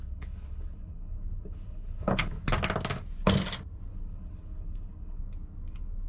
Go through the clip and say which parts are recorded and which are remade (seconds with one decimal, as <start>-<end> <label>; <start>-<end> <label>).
0.0-2.4 remade; 2.4-3.9 recorded; 3.9-5.2 remade; 5.2-6.1 recorded